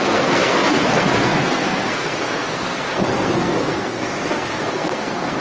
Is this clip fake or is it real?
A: fake